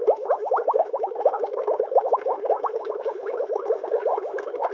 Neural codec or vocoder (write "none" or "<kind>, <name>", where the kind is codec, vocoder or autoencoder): autoencoder, DAC-VAE